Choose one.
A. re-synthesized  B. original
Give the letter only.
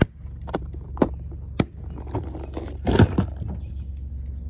B